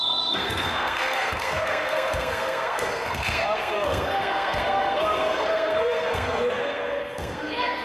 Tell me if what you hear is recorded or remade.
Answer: remade